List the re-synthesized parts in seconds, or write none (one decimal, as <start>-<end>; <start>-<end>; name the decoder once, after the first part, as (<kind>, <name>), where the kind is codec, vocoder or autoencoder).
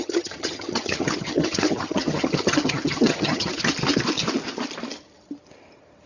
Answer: 0.0-3.7 (vocoder, HiFi-GAN)